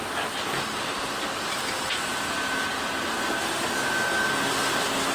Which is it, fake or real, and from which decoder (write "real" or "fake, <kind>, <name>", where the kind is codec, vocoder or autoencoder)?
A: real